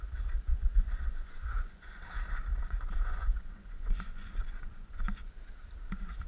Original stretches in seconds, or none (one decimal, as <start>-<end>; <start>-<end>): 0.0-0.5; 2.0-2.5; 5.3-6.3